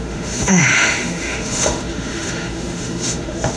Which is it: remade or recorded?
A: remade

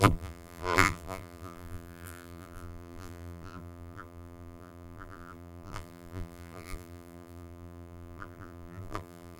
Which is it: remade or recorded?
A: remade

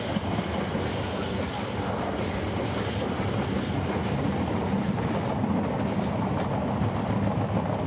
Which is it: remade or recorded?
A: recorded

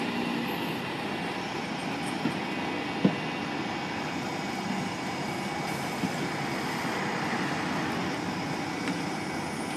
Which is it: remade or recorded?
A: recorded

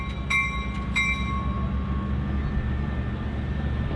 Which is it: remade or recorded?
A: recorded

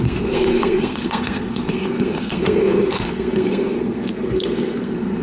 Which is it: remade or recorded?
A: remade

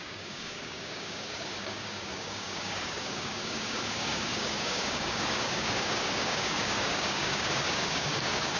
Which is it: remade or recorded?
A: remade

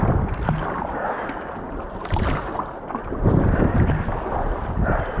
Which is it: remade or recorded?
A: recorded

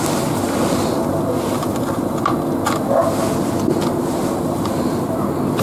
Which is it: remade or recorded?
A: recorded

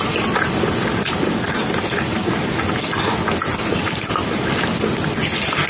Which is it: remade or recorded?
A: recorded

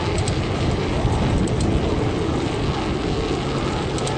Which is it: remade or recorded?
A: recorded